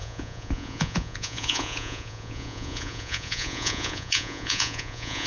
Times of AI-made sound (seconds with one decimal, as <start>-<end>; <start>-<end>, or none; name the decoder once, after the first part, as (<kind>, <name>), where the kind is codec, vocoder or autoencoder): 0.0-5.3 (vocoder, Vocos)